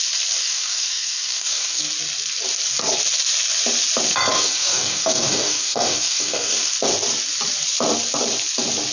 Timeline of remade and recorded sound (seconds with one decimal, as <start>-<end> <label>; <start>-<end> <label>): 0.0-0.4 recorded; 0.4-1.8 remade; 1.8-4.3 recorded; 4.3-6.7 remade; 6.7-8.9 recorded